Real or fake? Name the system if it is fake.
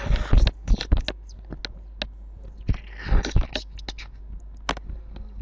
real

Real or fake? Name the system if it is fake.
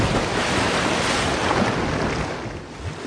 real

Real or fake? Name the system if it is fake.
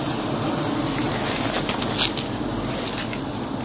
real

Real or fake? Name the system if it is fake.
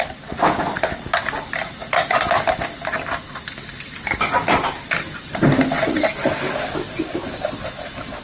real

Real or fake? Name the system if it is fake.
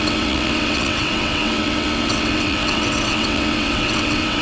fake, vocoder, WaveNeXt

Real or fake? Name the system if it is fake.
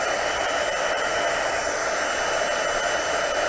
real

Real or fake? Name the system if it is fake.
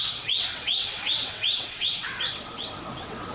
fake, vocoder, WaveNeXt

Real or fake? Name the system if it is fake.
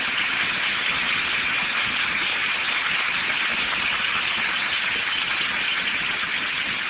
real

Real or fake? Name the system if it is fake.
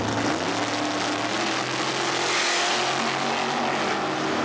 real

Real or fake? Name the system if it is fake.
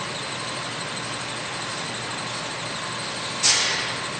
real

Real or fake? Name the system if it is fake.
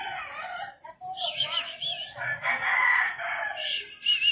real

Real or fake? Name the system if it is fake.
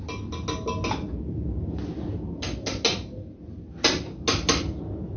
real